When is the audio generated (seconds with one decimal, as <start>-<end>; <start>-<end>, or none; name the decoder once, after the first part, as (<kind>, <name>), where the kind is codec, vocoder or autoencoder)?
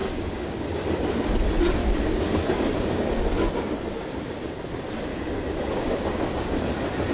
0.0-0.6 (codec, DAC); 1.8-3.1; 5.1-6.6